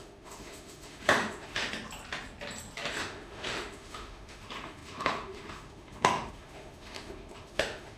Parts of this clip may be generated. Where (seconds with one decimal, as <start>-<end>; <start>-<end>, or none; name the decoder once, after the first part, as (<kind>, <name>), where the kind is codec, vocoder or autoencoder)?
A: 0.0-1.7 (autoencoder, DAC-VAE); 2.9-8.0